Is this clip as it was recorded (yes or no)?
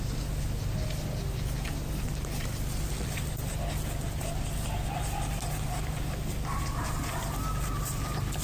yes